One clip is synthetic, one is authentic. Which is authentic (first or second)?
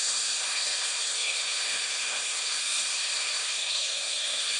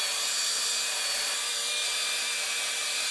second